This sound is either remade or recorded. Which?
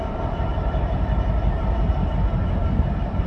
remade